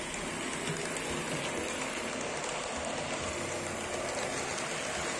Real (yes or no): yes